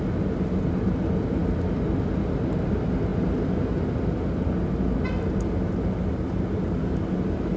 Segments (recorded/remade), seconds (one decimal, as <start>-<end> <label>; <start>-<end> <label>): 0.0-7.6 recorded